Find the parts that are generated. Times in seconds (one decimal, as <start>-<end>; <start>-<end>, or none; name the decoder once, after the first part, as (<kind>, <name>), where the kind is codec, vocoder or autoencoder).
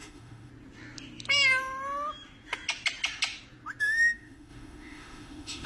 0.0-0.5 (autoencoder, DAC-VAE); 3.8-5.7